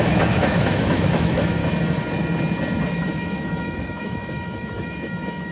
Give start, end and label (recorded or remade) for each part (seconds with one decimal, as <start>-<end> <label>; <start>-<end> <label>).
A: 0.0-1.6 remade; 1.6-2.9 recorded; 2.9-5.5 remade